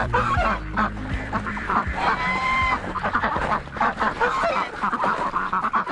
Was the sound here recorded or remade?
remade